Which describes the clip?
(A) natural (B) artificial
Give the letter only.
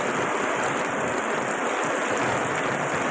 A